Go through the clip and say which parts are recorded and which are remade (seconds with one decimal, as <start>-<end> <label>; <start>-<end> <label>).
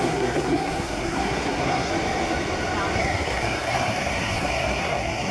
0.0-1.9 remade; 1.9-3.0 recorded; 3.0-5.3 remade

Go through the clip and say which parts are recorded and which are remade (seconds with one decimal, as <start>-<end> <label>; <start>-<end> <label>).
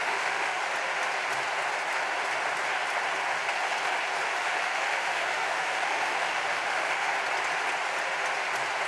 0.0-0.6 remade; 0.6-4.4 recorded; 4.4-7.1 remade; 7.1-8.9 recorded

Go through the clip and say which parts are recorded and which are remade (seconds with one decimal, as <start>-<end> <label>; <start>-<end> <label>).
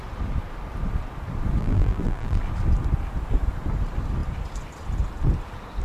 0.0-1.6 recorded; 1.6-2.4 remade; 2.4-5.8 recorded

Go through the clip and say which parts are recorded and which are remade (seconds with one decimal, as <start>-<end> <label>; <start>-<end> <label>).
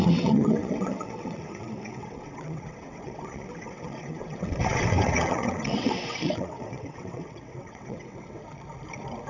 0.0-8.4 remade; 8.4-9.3 recorded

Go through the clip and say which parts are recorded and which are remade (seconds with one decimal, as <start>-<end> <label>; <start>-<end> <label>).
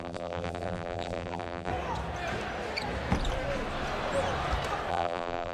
0.0-1.7 remade; 1.7-4.9 recorded; 4.9-5.5 remade